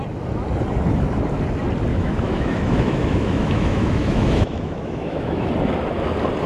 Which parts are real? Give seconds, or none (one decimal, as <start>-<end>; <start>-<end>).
0.0-1.9; 5.5-6.5